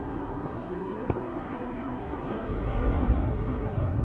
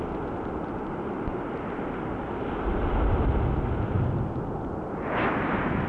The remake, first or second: first